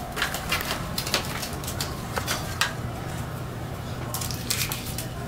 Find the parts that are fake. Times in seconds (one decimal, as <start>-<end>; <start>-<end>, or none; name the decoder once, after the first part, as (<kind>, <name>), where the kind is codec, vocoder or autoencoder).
1.5-4.0 (vocoder, BigVGAN v2)